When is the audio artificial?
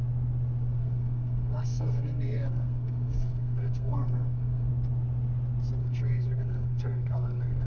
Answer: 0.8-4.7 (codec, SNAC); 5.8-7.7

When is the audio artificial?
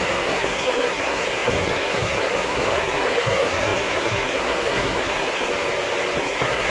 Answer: 0.0-5.5 (codec, SNAC); 6.2-6.7